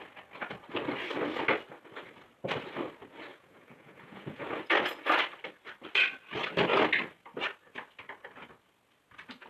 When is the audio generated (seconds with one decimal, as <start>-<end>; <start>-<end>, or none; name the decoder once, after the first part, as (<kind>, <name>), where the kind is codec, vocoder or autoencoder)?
3.3-4.6 (vocoder, Vocos)